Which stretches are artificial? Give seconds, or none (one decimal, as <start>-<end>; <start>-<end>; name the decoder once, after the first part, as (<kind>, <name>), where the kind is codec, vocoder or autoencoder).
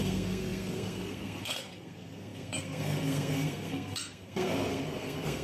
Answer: 0.0-5.4 (codec, SNAC)